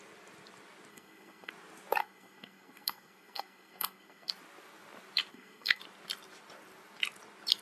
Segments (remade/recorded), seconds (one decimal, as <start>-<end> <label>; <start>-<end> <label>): 0.0-0.9 recorded; 0.9-1.5 remade; 1.5-2.0 recorded; 2.0-4.3 remade; 4.3-5.3 recorded; 5.3-5.8 remade; 5.8-7.6 recorded